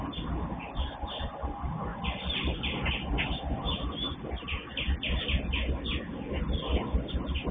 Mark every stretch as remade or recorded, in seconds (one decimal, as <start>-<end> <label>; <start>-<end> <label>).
0.0-7.5 recorded